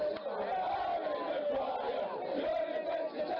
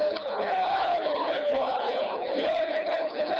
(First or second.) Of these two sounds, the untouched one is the first